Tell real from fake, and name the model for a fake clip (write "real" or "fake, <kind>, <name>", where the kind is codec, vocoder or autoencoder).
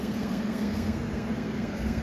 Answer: fake, codec, SNAC